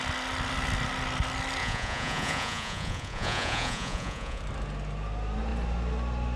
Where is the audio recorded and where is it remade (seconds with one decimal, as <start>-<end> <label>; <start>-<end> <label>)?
0.0-1.6 recorded; 1.6-4.4 remade; 4.4-6.4 recorded